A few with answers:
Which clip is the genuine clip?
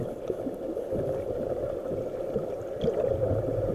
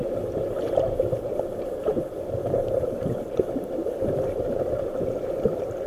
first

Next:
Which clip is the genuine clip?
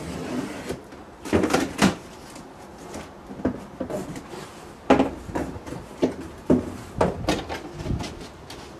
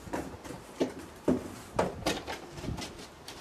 first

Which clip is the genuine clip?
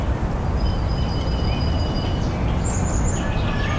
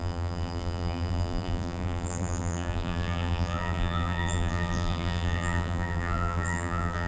first